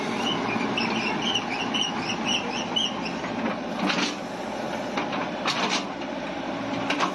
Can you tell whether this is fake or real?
real